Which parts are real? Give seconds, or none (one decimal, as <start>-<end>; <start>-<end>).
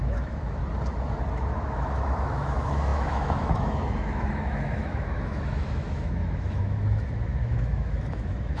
0.6-1.3